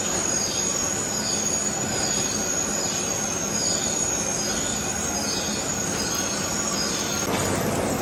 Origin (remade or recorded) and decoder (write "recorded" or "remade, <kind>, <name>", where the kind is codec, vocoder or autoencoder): recorded